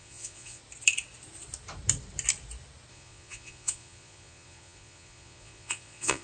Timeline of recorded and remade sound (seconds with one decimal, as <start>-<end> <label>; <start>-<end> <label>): 0.0-0.6 remade; 0.6-2.9 recorded; 2.9-6.2 remade